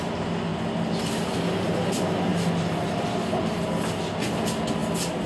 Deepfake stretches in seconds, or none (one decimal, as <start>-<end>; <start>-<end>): none